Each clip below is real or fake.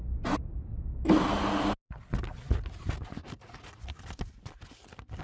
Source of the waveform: real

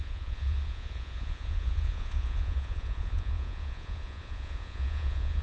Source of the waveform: fake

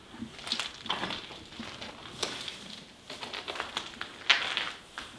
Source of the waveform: real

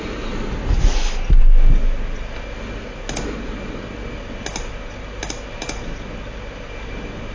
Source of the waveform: real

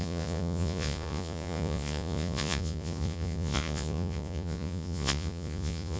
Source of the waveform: fake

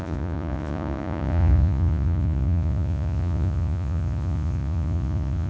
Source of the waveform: fake